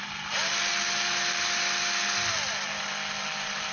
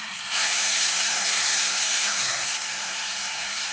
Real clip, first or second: first